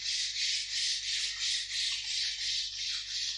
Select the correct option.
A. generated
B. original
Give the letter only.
B